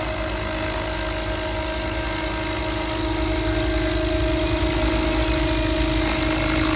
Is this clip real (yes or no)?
yes